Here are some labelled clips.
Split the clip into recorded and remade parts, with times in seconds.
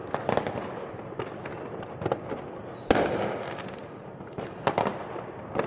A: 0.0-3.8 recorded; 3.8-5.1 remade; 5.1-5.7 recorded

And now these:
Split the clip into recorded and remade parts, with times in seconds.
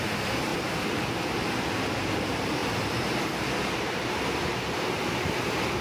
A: 0.0-0.5 remade; 0.5-1.9 recorded; 1.9-5.8 remade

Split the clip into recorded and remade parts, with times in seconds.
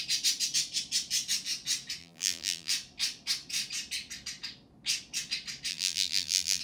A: 0.0-2.0 recorded; 2.0-2.7 remade; 2.7-5.7 recorded; 5.7-6.6 remade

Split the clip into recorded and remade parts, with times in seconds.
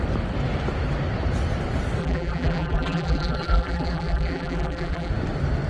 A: 0.0-2.0 recorded; 2.0-5.1 remade; 5.1-5.7 recorded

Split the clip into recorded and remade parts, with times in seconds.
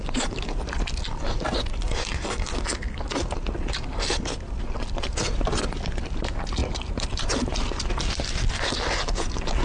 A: 0.0-6.6 recorded; 6.6-7.5 remade; 7.5-9.6 recorded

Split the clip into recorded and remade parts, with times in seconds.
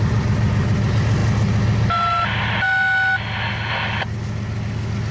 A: 0.0-5.1 recorded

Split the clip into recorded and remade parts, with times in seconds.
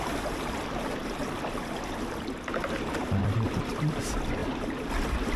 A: 0.0-1.0 recorded; 1.0-1.7 remade; 1.7-3.2 recorded; 3.2-4.0 remade; 4.0-4.4 recorded; 4.4-5.4 remade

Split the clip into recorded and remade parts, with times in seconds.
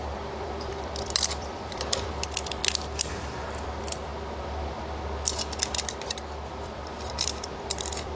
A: 0.0-2.6 remade; 2.6-3.1 recorded; 3.1-4.1 remade; 4.1-6.5 recorded; 6.5-8.2 remade